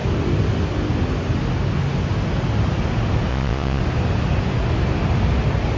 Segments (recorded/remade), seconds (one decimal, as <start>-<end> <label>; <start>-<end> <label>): 0.0-3.3 recorded; 3.3-3.8 remade; 3.8-5.8 recorded